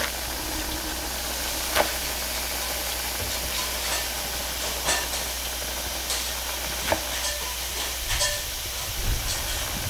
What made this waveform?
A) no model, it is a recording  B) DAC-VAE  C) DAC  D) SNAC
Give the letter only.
A